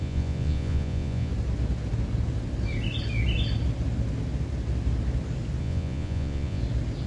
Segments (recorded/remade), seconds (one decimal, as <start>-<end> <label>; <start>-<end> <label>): 0.0-1.3 remade; 1.3-5.6 recorded; 5.6-6.6 remade; 6.6-7.1 recorded